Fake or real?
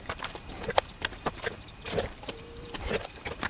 fake